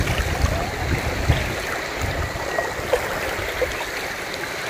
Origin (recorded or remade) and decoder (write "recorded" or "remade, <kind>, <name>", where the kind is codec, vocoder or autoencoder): recorded